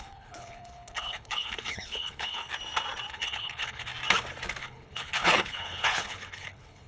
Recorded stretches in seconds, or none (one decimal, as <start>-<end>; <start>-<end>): 2.5-3.1; 3.9-4.6

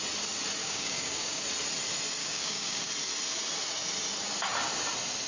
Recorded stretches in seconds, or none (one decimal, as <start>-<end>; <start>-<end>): 0.0-0.6; 1.4-2.2; 2.9-5.3

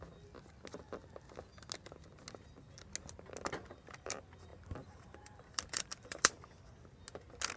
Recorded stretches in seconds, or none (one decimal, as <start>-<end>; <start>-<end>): 0.0-4.5; 6.3-7.6

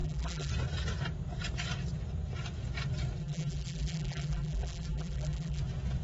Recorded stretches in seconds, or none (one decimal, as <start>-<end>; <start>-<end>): 0.5-3.2; 5.6-6.0